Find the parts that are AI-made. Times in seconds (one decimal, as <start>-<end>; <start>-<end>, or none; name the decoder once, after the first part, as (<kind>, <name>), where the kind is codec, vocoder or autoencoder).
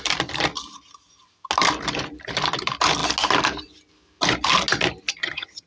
5.2-5.7 (vocoder, HiFi-GAN)